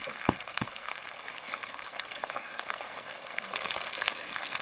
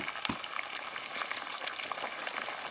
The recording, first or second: second